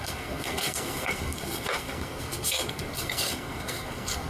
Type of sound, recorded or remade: remade